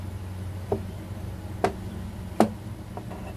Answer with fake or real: real